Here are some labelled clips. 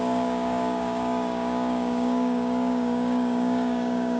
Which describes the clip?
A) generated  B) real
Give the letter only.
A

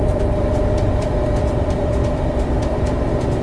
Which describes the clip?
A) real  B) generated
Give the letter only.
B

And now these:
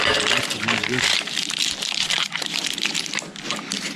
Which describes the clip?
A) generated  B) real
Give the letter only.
B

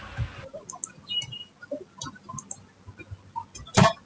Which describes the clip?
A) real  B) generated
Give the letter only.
A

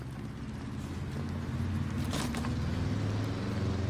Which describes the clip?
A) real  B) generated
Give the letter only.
A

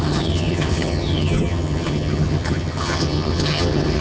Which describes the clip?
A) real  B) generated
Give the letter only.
B